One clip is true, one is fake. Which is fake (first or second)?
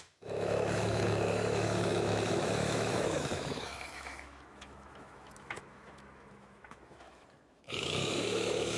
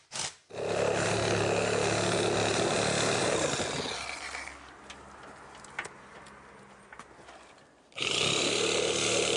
first